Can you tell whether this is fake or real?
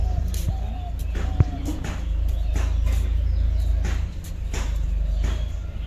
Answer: real